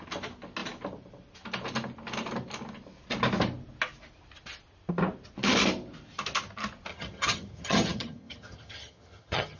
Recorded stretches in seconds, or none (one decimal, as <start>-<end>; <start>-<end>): 0.0-6.9